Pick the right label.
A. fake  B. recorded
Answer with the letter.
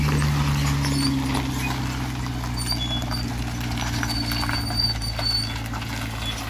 B